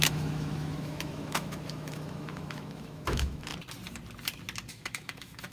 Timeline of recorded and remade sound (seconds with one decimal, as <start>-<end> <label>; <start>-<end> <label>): 0.0-3.5 remade; 3.5-4.7 recorded; 4.7-5.5 remade